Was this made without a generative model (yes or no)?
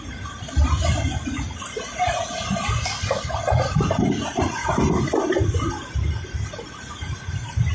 yes